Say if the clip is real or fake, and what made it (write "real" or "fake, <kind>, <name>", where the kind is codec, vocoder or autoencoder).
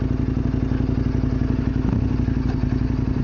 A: real